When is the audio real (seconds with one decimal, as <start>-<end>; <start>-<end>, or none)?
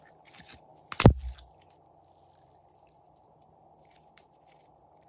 0.7-3.8